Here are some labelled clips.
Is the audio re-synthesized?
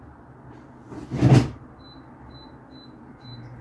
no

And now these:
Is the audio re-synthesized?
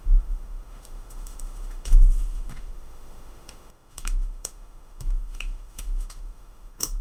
yes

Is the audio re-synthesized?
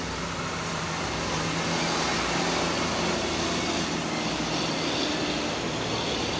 no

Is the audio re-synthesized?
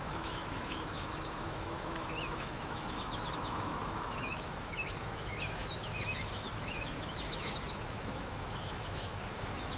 yes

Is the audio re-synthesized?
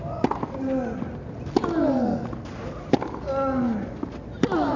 no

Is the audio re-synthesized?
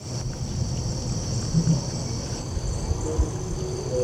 no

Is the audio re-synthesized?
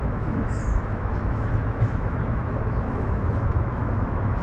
yes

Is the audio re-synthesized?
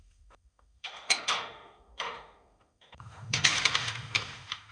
yes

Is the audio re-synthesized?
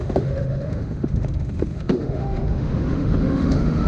yes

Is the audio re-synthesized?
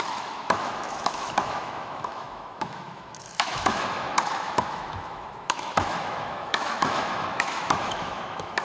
yes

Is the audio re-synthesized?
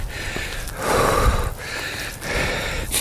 no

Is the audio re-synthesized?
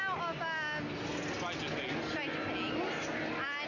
no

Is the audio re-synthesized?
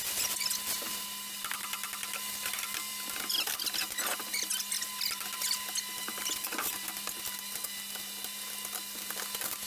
no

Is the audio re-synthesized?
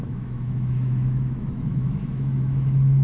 yes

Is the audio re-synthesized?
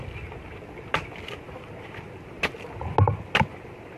no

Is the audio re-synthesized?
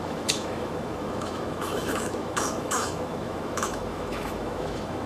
yes